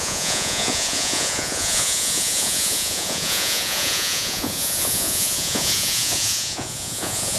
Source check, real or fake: fake